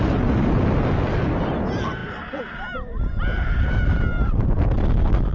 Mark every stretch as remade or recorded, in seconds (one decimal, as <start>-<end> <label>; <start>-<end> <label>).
0.0-2.0 recorded; 2.0-4.8 remade; 4.8-5.3 recorded